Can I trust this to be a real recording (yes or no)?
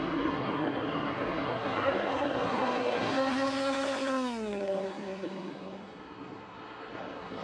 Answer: no